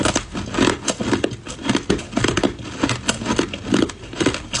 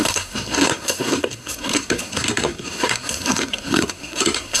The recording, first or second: first